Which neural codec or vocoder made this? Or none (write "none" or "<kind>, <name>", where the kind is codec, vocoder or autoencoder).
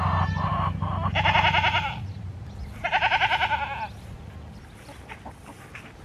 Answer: none